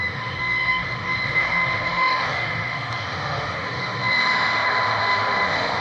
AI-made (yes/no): yes